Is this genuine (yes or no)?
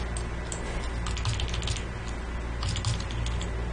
yes